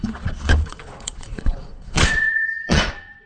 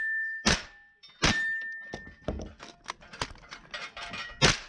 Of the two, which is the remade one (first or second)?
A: first